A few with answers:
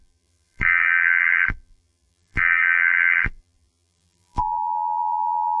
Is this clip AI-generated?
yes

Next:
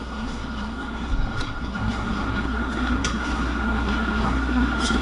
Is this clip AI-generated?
yes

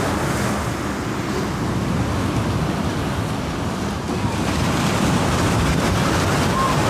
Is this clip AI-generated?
no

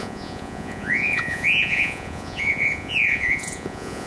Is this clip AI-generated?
yes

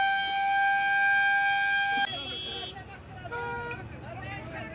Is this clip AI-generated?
no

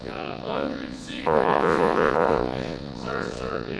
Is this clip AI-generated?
yes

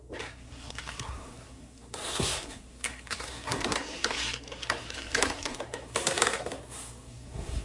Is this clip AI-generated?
yes